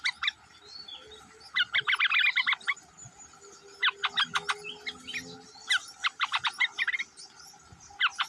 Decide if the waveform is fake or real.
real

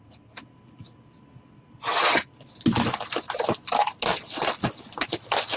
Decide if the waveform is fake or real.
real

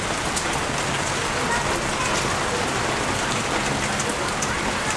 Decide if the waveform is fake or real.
real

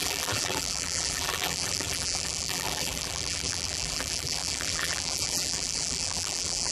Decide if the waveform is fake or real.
fake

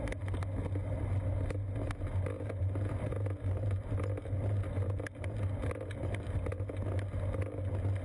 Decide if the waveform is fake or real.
real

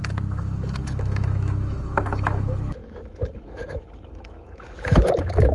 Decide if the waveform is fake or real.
fake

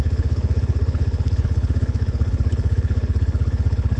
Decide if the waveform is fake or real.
fake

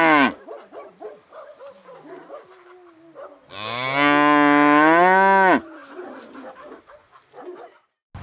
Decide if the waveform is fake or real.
real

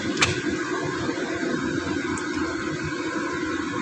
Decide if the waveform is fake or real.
real